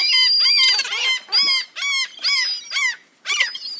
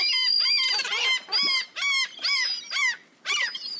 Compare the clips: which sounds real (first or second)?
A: first